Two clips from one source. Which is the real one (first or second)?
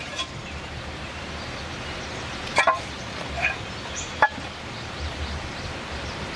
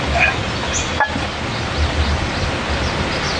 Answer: second